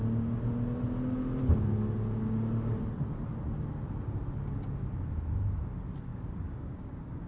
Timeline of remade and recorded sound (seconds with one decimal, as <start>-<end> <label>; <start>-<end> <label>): 0.0-6.1 recorded; 6.1-7.3 remade